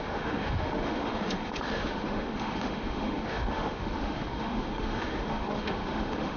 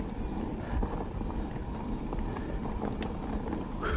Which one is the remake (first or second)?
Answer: first